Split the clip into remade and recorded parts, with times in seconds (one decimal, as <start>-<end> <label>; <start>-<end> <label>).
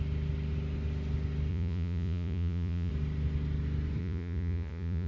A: 0.0-1.5 recorded; 1.5-2.9 remade; 2.9-4.0 recorded; 4.0-5.1 remade